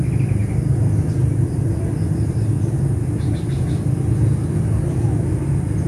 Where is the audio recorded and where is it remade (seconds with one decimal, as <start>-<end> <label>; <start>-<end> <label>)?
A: 0.0-5.9 recorded